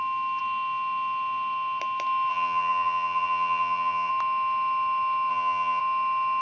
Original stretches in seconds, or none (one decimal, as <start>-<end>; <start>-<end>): 0.0-2.3; 4.1-5.3; 5.8-6.4